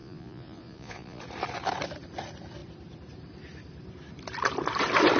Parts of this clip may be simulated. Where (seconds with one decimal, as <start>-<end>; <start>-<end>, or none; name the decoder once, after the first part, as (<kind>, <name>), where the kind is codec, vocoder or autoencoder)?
0.0-1.2 (vocoder, Vocos)

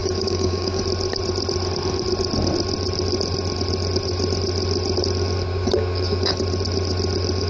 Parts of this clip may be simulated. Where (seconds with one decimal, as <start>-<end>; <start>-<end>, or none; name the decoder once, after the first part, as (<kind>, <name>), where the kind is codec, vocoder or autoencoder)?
0.0-0.8 (codec, DAC)

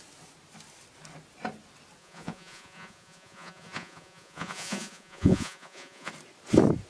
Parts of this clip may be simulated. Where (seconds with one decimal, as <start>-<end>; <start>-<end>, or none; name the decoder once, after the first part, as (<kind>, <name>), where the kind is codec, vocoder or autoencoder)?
2.0-6.1 (vocoder, Vocos)

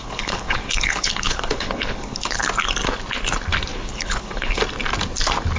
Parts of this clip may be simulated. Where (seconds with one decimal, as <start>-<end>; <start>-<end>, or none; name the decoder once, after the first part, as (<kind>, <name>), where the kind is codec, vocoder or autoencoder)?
0.0-2.4 (codec, HILCodec); 3.7-4.6